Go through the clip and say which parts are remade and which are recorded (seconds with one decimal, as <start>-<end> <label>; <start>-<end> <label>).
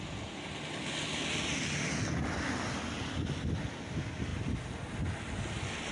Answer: 0.0-5.9 recorded